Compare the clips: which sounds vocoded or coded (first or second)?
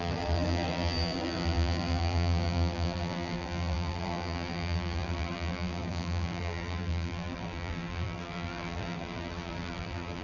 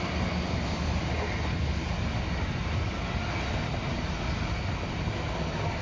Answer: first